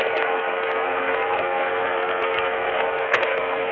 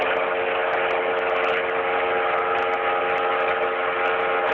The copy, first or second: first